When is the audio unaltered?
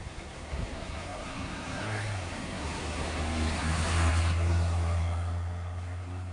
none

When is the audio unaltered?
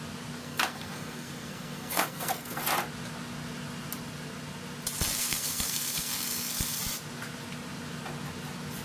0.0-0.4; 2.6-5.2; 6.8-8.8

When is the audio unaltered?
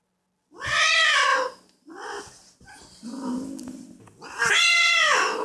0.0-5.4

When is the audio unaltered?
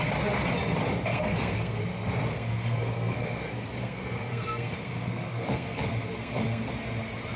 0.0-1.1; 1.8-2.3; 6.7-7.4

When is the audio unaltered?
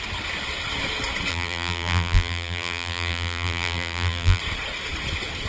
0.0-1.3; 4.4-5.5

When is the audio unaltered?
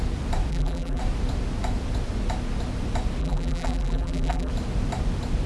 0.0-0.5; 1.0-3.2; 4.5-5.5